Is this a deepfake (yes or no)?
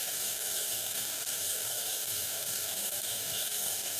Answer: yes